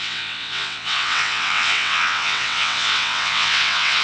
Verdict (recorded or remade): remade